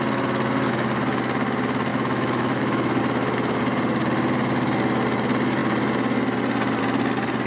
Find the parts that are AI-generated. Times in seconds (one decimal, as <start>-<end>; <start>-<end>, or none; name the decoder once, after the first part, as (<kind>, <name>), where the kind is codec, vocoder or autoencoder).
1.9-3.0 (autoencoder, DAC-VAE)